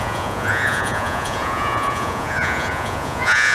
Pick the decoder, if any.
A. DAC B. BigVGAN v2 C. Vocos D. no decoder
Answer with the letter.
C